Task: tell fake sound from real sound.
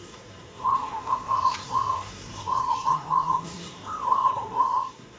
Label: fake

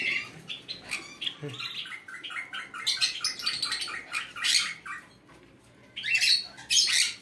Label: real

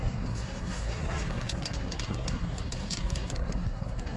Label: fake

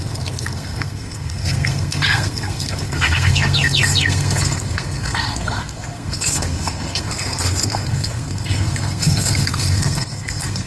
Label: fake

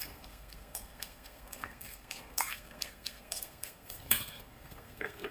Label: fake